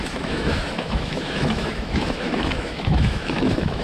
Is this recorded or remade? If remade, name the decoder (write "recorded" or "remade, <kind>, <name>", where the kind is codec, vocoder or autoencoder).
remade, autoencoder, DAC-VAE